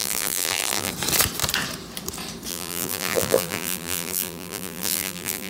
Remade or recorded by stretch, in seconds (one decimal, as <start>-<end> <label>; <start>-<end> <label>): 0.0-0.9 remade; 0.9-2.5 recorded; 2.5-5.5 remade